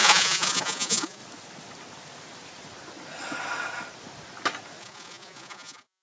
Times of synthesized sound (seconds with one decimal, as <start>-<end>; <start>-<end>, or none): 0.0-1.2; 4.8-6.0